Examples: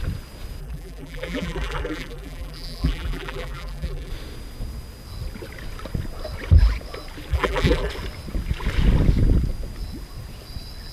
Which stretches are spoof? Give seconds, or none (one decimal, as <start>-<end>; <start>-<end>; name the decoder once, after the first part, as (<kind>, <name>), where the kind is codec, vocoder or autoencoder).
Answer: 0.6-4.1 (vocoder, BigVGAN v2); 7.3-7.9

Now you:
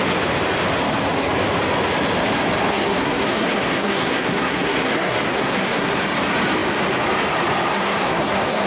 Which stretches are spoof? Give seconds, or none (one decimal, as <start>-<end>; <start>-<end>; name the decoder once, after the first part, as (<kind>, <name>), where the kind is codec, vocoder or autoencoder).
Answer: 2.7-6.0 (codec, SNAC); 7.7-8.7

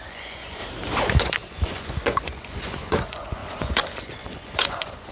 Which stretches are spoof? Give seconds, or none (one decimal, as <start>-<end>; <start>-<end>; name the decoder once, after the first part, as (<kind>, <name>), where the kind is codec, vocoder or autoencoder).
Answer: 0.0-0.6 (vocoder, Vocos); 1.2-5.1